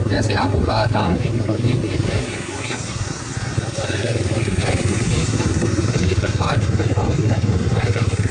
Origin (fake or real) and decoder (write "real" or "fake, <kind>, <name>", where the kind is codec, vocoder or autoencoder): fake, codec, SNAC